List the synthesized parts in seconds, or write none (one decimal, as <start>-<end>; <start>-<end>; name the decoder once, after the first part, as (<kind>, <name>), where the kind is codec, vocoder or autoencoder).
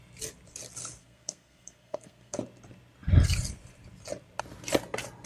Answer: 1.0-2.4 (codec, SNAC)